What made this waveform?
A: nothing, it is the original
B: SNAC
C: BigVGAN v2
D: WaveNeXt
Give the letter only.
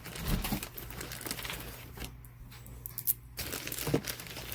A